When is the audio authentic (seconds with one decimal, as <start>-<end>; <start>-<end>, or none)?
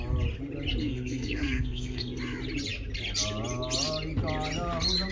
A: 0.0-0.8; 2.2-5.1